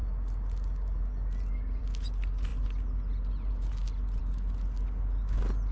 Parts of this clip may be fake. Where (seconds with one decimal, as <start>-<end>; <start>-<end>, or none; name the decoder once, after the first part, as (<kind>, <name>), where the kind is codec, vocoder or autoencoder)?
none

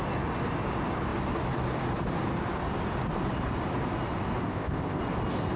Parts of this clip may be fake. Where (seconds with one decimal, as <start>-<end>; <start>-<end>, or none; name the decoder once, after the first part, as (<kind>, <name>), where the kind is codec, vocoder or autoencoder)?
4.5-5.0 (codec, ZipCodec)

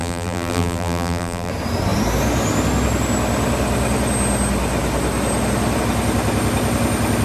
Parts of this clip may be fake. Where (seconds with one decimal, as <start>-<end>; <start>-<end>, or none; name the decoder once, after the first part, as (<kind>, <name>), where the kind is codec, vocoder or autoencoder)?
0.0-1.5 (vocoder, BigVGAN v2)

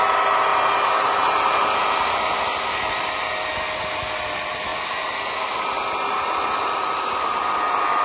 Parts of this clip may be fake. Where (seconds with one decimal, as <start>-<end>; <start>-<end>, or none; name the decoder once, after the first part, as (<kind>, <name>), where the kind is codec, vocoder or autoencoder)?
none

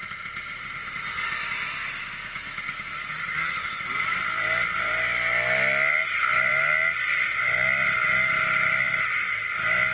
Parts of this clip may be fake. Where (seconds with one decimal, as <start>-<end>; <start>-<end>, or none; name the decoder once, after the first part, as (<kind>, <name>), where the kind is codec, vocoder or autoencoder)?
none

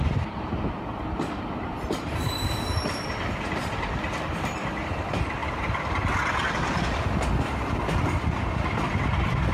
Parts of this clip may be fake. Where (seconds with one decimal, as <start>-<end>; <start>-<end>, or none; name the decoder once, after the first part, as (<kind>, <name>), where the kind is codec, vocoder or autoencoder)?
0.9-3.2 (vocoder, BigVGAN v2)

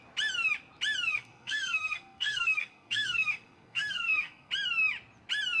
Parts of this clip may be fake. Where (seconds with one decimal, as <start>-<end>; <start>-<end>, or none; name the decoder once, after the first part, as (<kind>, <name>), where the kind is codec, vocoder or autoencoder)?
1.1-4.5 (codec, SNAC)